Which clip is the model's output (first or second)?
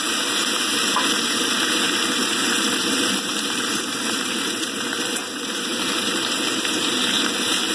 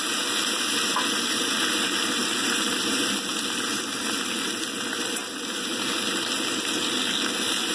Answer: first